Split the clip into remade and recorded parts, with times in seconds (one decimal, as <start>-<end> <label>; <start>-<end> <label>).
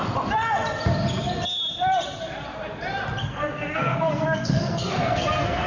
0.0-3.2 recorded; 3.2-5.7 remade